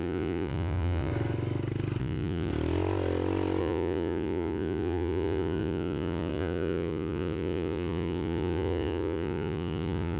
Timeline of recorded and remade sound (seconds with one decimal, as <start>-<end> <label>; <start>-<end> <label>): 0.0-1.1 remade; 1.1-2.0 recorded; 2.0-2.5 remade; 2.5-3.6 recorded; 3.6-10.2 remade